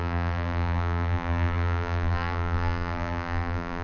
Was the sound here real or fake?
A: fake